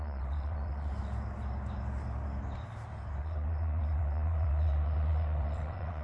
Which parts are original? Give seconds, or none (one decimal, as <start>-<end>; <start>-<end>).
0.9-3.2